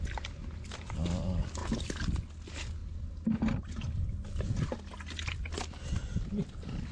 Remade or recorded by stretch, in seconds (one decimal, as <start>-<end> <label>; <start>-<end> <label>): 0.0-6.9 recorded